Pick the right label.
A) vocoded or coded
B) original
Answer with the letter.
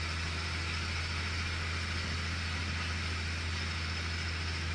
B